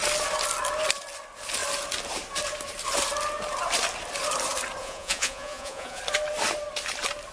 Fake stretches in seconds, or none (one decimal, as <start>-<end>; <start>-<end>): 4.8-6.0